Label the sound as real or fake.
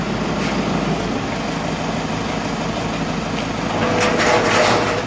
real